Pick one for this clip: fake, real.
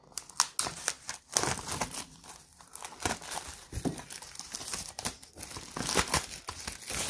real